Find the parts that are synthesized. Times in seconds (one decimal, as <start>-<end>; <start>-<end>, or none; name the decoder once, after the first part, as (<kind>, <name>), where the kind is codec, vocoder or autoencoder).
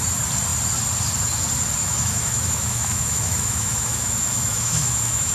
1.8-5.3 (autoencoder, DAC-VAE)